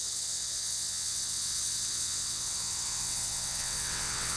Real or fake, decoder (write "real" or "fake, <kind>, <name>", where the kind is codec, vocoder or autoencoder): fake, vocoder, WaveNeXt